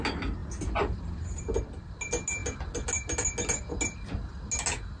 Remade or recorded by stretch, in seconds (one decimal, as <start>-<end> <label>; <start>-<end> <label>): 0.0-5.0 recorded